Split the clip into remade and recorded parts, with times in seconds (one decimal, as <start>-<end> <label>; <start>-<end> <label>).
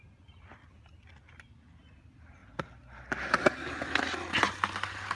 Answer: 0.0-5.1 recorded